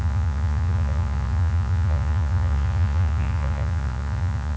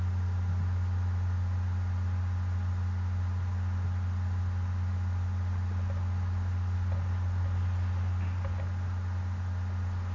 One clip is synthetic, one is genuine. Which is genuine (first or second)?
second